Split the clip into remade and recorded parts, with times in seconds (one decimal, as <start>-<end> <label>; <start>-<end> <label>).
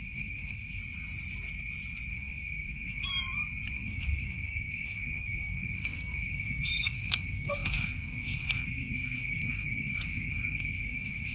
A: 0.0-0.8 remade; 0.8-2.1 recorded; 2.1-3.1 remade; 3.1-3.7 recorded; 3.7-11.3 remade